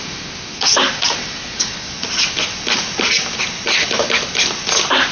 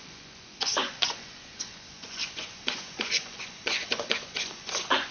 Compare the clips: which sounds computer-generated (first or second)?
second